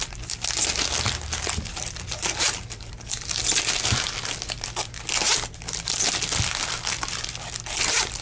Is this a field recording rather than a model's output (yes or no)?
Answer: yes